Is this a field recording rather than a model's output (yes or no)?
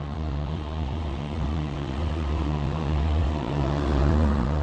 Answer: no